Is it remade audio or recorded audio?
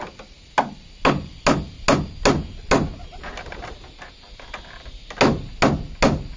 recorded